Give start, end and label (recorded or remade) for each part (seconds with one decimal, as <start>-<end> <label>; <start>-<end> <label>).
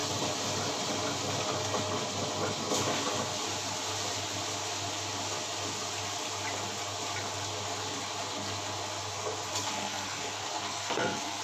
0.0-9.5 recorded; 9.5-11.4 remade